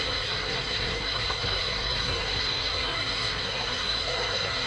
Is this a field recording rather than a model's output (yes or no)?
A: no